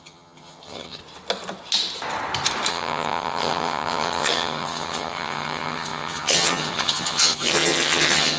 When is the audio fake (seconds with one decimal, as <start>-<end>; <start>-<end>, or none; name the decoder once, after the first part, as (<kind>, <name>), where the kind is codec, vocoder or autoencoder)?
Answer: 0.0-1.0 (vocoder, HiFi-GAN); 2.7-8.4